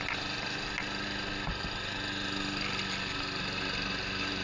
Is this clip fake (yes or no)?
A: no